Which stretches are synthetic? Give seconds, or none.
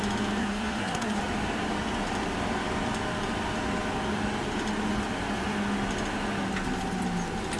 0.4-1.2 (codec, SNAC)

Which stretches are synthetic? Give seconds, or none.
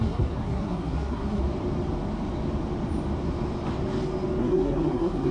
0.0-1.4 (codec, SNAC); 4.4-5.3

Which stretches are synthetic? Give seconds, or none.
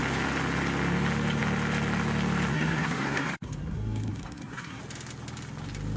2.5-4.8 (codec, SNAC)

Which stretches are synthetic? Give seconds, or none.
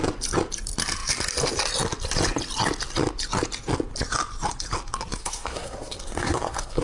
5.2-6.8 (codec, SNAC)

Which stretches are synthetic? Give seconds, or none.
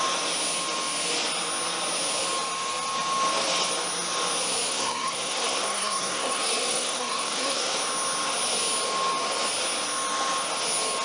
4.7-7.7 (codec, SNAC)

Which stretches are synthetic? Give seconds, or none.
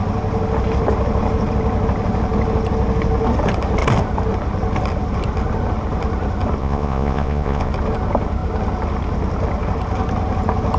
6.6-7.7 (vocoder, Vocos)